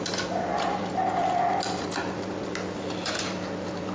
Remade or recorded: recorded